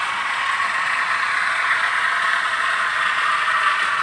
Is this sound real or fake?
fake